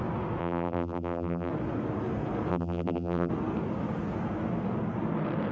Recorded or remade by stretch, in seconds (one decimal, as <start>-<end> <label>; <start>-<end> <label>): 0.0-0.4 recorded; 0.4-1.5 remade; 1.5-2.5 recorded; 2.5-3.3 remade; 3.3-5.5 recorded